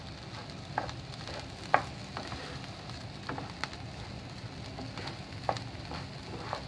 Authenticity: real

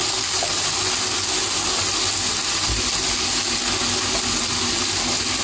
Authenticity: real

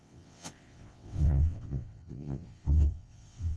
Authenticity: fake